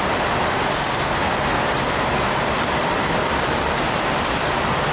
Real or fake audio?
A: real